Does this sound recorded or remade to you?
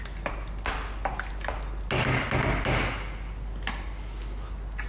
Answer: recorded